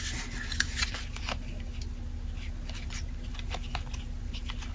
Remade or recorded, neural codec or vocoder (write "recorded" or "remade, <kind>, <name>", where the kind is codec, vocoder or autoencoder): recorded